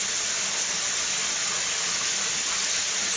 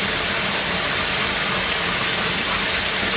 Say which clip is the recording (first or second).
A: first